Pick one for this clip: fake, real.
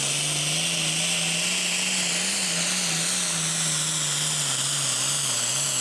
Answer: real